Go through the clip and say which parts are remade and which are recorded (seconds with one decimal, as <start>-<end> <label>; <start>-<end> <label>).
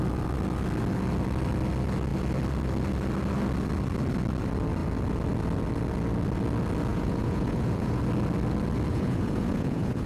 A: 0.0-6.9 recorded; 6.9-8.0 remade; 8.0-8.9 recorded; 8.9-10.1 remade